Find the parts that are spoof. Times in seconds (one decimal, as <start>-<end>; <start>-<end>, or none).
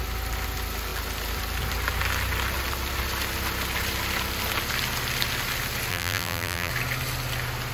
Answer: 5.9-6.7